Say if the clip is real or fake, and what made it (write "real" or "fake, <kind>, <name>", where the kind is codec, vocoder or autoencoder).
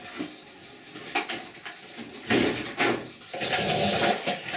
real